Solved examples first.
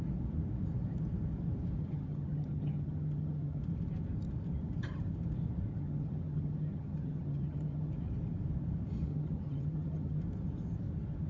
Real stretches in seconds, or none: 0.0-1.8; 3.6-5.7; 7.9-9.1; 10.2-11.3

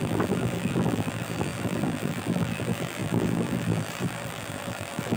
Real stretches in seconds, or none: none